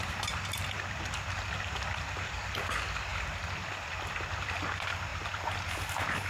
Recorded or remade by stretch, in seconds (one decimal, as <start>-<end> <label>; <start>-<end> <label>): 0.0-6.3 recorded